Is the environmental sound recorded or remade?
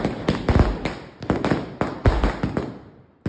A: recorded